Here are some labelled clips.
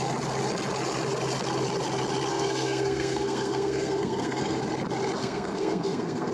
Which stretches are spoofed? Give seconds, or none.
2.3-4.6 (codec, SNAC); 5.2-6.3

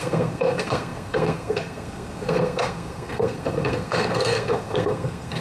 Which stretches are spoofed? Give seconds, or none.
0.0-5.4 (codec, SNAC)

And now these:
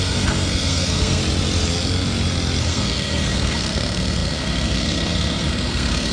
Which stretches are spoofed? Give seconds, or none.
0.0-1.2 (codec, SNAC); 2.6-6.1

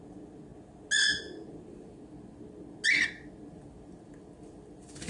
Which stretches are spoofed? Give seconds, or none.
none

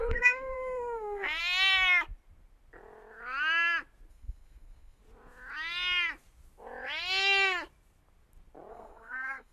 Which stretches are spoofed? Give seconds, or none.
0.0-1.4 (codec, SNAC); 4.1-5.0; 8.7-9.5

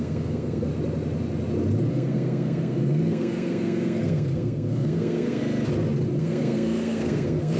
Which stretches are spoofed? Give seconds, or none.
0.0-0.7 (codec, SNAC); 1.9-5.4; 6.2-7.6